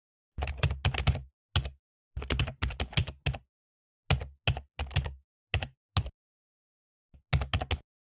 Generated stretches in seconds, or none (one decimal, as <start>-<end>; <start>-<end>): none